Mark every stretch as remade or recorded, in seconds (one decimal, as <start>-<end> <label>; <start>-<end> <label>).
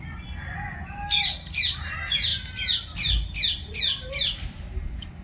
0.0-5.2 recorded